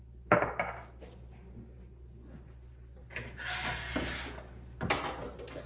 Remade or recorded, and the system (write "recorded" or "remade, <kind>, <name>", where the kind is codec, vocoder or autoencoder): recorded